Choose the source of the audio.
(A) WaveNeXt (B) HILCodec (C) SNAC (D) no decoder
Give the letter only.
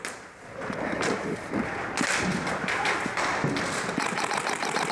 D